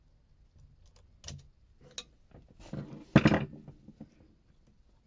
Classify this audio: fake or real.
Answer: real